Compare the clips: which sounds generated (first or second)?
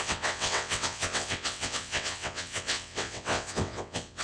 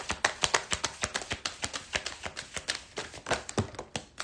first